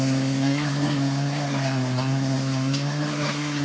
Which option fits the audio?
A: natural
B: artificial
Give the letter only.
B